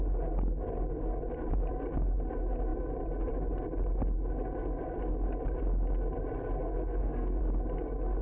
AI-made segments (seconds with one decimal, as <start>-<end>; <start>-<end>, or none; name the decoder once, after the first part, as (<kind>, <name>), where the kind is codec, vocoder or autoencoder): 6.6-7.4 (codec, SNAC)